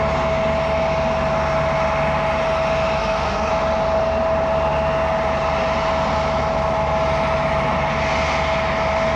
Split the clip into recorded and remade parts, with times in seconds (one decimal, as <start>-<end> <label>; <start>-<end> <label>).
0.0-3.0 recorded; 3.0-3.5 remade; 3.5-9.2 recorded